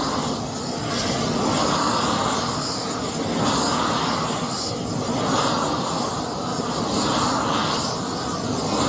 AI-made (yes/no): no